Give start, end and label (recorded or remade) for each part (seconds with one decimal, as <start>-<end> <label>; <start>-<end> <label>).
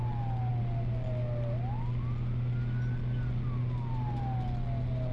0.0-5.1 recorded